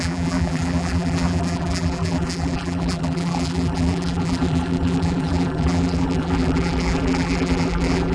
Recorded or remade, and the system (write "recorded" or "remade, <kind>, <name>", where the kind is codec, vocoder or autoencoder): remade, vocoder, BigVGAN v2